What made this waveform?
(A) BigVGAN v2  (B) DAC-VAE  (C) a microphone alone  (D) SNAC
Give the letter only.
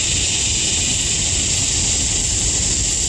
C